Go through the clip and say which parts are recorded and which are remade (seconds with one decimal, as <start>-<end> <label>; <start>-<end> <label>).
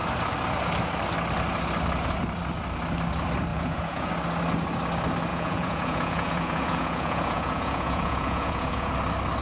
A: 0.0-3.5 recorded; 3.5-4.1 remade; 4.1-5.3 recorded; 5.3-8.9 remade; 8.9-9.4 recorded